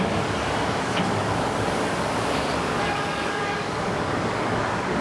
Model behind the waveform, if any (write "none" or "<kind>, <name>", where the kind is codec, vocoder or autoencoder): codec, DAC